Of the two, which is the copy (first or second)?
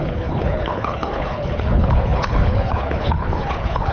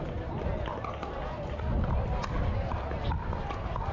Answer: first